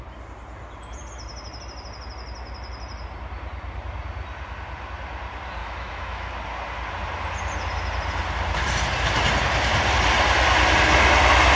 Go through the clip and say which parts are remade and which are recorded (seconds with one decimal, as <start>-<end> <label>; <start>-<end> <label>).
0.0-5.6 recorded; 5.6-6.3 remade; 6.3-11.6 recorded